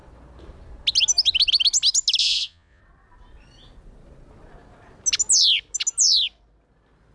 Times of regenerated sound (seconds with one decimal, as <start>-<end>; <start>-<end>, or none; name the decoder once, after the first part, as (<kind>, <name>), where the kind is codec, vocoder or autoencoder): 2.2-2.8 (vocoder, Vocos)

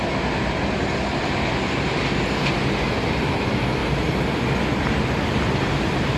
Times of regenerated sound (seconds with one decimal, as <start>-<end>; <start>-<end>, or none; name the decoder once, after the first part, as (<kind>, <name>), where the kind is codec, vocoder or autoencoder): none

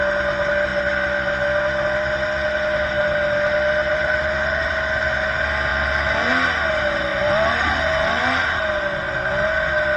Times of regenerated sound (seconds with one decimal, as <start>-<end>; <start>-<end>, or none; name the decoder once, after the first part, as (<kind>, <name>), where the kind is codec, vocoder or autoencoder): 3.9-4.7 (vocoder, BigVGAN v2); 5.7-6.3; 7.1-8.6

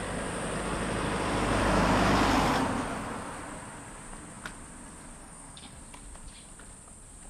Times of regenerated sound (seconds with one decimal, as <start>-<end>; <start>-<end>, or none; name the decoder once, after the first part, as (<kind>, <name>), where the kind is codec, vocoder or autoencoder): 5.2-5.8 (codec, SNAC)

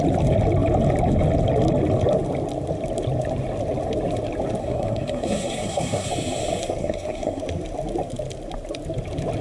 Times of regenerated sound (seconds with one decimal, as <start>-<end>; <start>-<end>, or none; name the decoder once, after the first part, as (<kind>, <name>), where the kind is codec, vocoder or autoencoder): 4.6-6.1 (codec, SNAC); 6.8-7.4

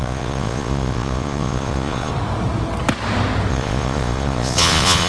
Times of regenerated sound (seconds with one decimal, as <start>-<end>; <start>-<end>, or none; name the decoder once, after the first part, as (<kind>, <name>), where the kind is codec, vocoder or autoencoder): 0.0-2.1 (vocoder, Vocos); 3.5-5.1